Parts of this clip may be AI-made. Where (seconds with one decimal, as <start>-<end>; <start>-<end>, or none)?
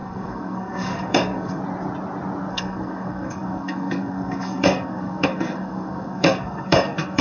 0.0-1.6; 2.5-7.2